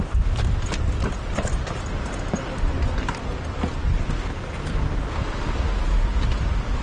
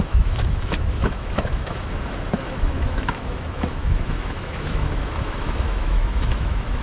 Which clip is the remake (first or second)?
second